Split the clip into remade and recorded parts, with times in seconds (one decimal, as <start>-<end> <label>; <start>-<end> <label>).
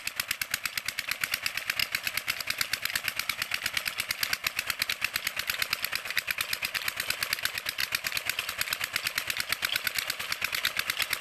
0.0-11.2 recorded